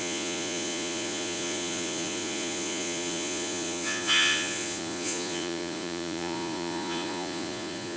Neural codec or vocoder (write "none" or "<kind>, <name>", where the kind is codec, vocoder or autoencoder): vocoder, Vocos